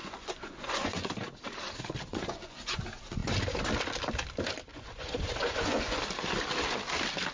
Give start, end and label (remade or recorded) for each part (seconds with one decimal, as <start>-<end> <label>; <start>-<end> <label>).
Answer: 0.0-1.1 remade; 1.1-2.1 recorded; 2.1-2.8 remade; 2.8-4.7 recorded; 4.7-6.0 remade; 6.0-7.3 recorded